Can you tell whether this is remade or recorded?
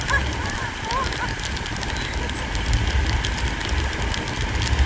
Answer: recorded